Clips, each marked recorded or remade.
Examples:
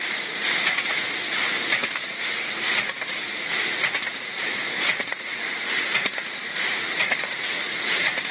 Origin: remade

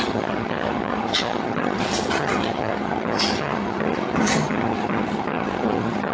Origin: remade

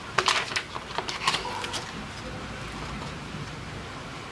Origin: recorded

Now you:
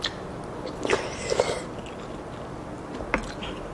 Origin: recorded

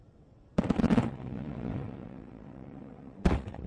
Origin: remade